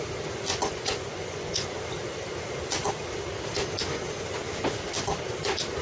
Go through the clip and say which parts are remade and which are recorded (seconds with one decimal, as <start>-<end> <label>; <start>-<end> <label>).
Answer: 0.0-0.5 recorded; 0.5-1.7 remade; 1.7-5.8 recorded